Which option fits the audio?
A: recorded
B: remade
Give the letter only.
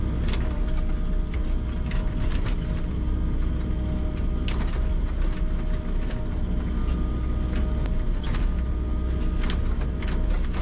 A